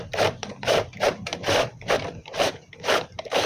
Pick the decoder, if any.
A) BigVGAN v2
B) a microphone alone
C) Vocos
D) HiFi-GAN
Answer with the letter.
A